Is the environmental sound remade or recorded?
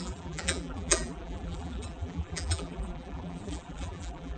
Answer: remade